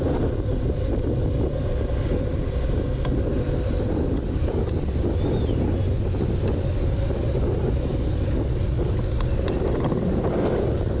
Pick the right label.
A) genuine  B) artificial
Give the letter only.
A